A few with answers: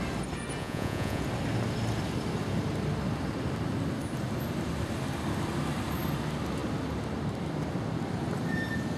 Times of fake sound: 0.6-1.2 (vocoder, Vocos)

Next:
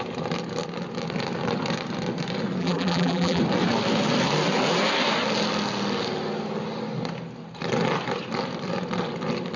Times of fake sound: 2.6-3.4 (vocoder, BigVGAN v2)

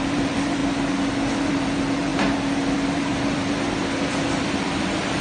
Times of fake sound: 0.0-0.6 (vocoder, BigVGAN v2); 1.5-2.1; 2.7-3.8; 4.4-5.2

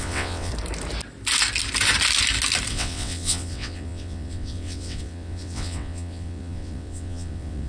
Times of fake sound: 0.0-0.5 (vocoder, WaveNeXt); 2.7-7.7

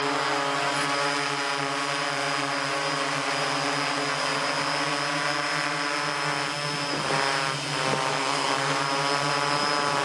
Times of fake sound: 8.1-8.8 (codec, SNAC)